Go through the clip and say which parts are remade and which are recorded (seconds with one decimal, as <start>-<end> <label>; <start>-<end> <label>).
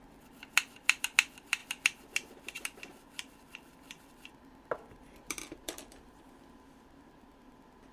0.0-2.9 recorded; 2.9-7.9 remade